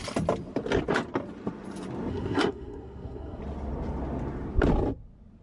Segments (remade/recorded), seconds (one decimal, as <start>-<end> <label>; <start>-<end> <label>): 0.0-2.1 recorded; 2.1-3.4 remade; 3.4-5.4 recorded

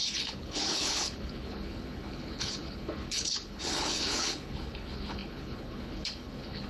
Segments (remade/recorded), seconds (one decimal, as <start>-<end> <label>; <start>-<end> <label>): 0.0-6.7 remade

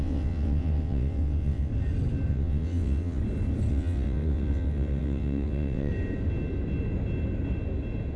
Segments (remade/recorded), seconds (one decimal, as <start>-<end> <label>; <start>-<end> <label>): 0.0-1.7 remade; 1.7-2.3 recorded; 2.3-3.2 remade; 3.2-3.7 recorded; 3.7-5.9 remade; 5.9-8.2 recorded

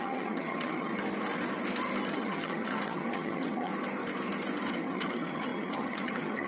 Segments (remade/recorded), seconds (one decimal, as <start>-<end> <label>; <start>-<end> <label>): 0.0-0.9 remade; 0.9-2.1 recorded; 2.1-3.7 remade; 3.7-4.7 recorded; 4.7-6.5 remade

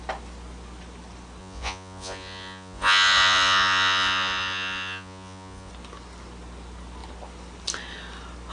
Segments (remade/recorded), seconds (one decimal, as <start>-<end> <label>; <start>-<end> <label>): 0.0-1.4 recorded; 1.4-5.7 remade; 5.7-8.5 recorded